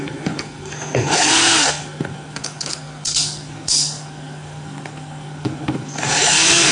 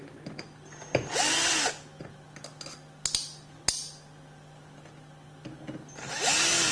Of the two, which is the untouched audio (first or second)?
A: second